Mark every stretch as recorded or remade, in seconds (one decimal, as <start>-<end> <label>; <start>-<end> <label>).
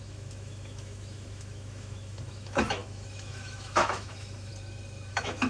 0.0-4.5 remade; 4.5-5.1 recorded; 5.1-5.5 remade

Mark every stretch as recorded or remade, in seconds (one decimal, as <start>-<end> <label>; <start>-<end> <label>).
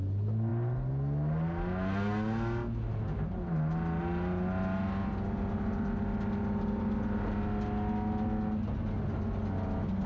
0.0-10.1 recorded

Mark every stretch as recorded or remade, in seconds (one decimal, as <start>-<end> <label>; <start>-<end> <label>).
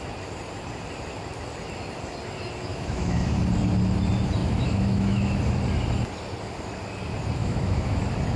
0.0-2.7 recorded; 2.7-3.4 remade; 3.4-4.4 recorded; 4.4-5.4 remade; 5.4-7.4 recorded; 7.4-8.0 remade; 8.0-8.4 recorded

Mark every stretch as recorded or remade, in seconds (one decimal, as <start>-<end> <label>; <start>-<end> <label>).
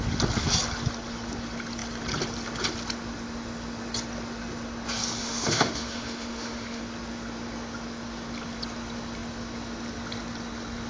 0.0-5.2 recorded; 5.2-6.8 remade; 6.8-10.9 recorded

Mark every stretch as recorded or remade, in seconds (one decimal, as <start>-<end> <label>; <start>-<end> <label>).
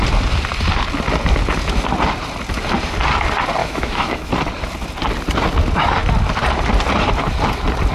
0.0-3.6 recorded; 3.6-4.3 remade; 4.3-7.9 recorded